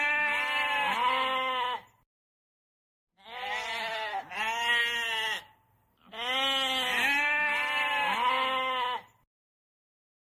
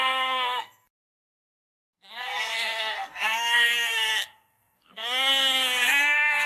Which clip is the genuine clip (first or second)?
first